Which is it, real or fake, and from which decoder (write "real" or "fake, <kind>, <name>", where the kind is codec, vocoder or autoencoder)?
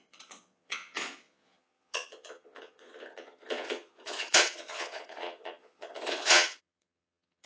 fake, vocoder, Vocos